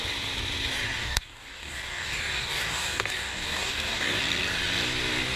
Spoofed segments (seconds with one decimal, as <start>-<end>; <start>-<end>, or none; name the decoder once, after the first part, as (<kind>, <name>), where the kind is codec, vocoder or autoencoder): 1.0-4.2 (codec, DAC)